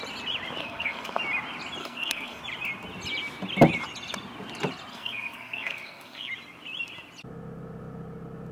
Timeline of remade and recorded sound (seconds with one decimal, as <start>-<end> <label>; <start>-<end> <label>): 0.0-0.6 recorded; 0.6-1.2 remade; 1.2-1.8 recorded; 1.8-2.4 remade; 2.4-4.9 recorded; 4.9-6.3 remade; 6.3-8.5 recorded

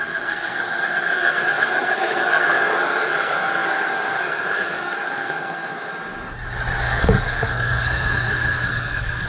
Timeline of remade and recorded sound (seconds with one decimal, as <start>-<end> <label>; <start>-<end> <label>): 0.0-5.9 remade; 5.9-6.8 recorded; 6.8-9.3 remade